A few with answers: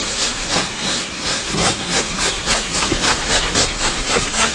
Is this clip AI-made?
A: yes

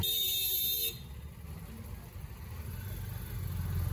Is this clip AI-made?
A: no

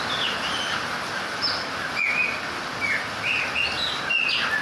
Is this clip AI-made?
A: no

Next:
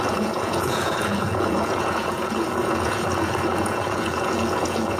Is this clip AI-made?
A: yes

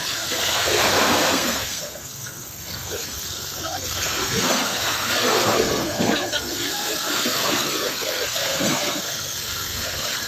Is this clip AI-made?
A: yes